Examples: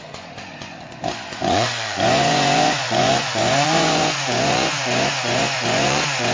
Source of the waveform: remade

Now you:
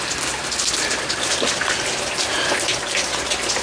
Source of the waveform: recorded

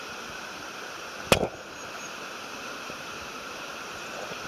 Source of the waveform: recorded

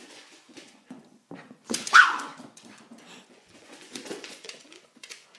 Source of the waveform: remade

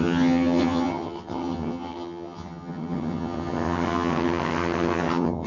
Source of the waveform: remade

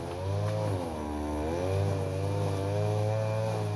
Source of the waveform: recorded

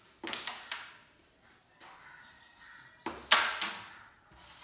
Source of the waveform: recorded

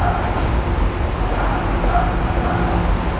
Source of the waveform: recorded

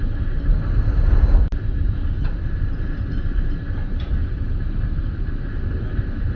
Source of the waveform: recorded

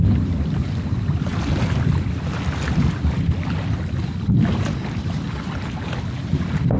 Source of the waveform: recorded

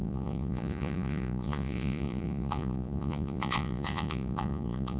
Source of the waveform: remade